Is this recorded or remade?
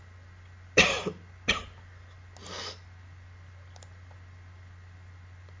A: recorded